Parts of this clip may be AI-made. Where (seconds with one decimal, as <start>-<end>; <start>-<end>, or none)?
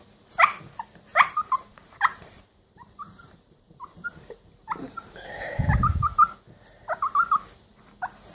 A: 1.1-5.5